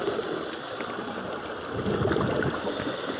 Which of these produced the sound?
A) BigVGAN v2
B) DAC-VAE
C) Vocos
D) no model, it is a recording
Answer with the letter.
D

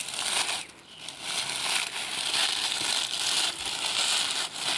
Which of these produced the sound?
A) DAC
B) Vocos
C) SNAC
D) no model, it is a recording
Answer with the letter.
D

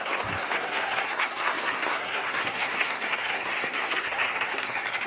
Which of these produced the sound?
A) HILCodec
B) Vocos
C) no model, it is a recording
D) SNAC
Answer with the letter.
D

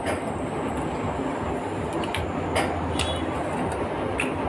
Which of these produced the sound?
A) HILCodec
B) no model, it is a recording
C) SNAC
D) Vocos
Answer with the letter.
B